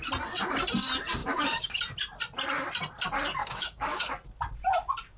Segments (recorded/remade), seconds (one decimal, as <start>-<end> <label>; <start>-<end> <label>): 0.0-1.2 recorded; 1.2-1.8 remade; 1.8-3.4 recorded; 3.4-4.1 remade; 4.1-5.2 recorded